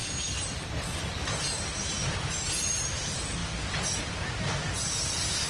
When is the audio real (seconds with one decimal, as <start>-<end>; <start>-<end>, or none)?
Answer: 0.0-5.5